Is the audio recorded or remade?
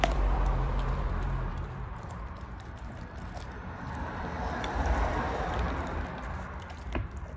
remade